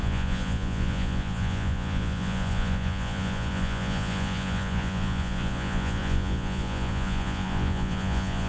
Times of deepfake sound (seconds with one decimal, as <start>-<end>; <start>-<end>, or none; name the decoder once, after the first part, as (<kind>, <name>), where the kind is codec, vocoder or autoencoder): 0.0-8.5 (vocoder, Vocos)